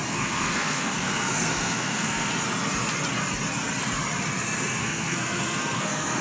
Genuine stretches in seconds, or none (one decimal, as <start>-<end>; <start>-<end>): 2.3-4.8